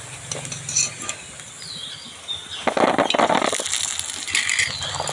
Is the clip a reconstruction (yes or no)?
no